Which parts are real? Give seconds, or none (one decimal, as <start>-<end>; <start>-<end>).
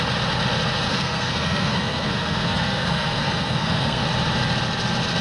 0.0-0.9; 4.0-5.2